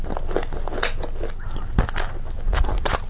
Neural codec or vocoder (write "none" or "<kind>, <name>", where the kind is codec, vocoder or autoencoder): none